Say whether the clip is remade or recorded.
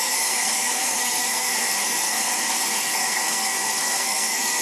remade